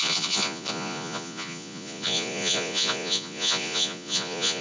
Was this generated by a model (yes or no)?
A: yes